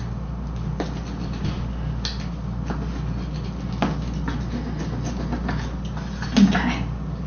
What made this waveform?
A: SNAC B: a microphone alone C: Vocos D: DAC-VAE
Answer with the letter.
B